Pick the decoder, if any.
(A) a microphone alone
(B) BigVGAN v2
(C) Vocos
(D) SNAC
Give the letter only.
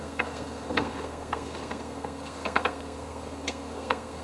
D